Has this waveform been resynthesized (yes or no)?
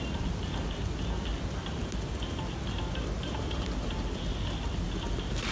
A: no